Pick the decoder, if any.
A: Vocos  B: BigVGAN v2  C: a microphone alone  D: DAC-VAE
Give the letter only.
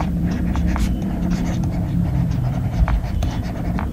B